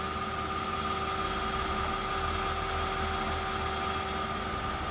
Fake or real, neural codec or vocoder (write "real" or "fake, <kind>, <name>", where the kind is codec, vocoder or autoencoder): real